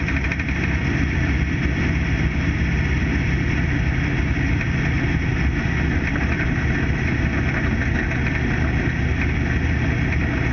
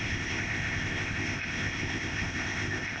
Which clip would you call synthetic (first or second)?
second